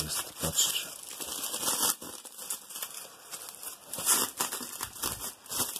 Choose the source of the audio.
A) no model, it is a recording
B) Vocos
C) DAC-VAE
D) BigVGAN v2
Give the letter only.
A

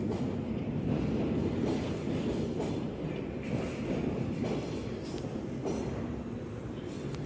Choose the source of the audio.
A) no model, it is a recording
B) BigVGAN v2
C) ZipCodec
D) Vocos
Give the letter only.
A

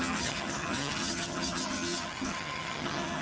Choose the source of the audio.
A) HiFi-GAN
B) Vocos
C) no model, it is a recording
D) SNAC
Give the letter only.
A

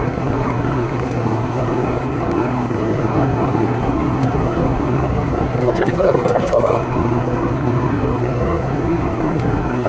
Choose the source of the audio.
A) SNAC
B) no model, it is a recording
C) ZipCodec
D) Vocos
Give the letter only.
A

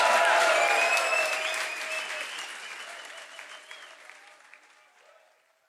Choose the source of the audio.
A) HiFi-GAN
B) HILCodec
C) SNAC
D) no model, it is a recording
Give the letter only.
D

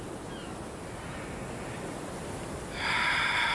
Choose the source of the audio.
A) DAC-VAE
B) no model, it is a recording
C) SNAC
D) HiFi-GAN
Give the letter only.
B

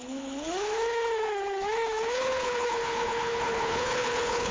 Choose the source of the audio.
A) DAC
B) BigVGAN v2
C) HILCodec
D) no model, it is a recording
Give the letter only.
C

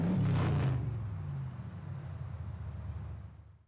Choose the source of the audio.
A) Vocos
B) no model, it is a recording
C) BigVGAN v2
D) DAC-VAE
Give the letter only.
B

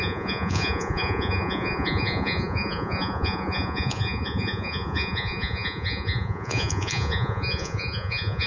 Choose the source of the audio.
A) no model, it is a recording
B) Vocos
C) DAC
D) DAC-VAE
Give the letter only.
B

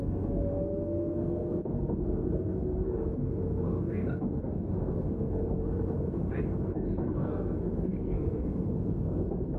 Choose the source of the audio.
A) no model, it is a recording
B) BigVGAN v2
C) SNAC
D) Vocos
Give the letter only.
C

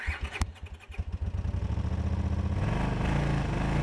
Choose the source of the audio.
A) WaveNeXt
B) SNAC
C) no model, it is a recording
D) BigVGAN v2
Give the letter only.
C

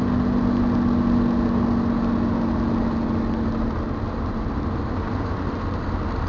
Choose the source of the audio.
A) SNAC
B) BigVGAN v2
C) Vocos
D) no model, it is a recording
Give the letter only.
D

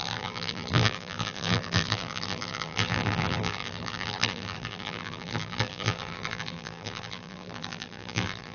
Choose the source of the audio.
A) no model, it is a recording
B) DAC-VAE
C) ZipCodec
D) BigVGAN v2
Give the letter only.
D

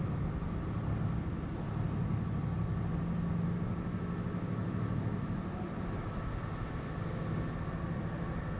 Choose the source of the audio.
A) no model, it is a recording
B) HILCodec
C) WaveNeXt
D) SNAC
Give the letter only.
A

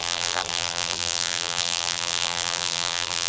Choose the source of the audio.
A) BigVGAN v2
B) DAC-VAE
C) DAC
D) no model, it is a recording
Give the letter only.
A